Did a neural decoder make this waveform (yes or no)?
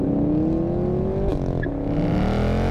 no